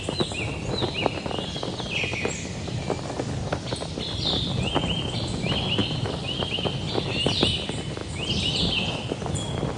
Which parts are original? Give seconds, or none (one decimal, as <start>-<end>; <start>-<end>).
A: 0.0-9.8